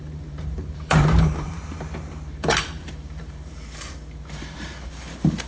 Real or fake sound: fake